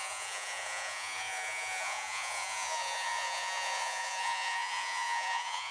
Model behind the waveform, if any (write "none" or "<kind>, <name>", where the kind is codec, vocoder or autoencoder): vocoder, Vocos